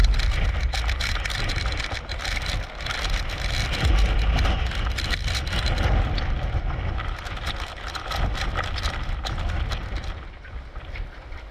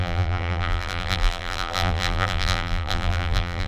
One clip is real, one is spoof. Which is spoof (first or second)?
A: second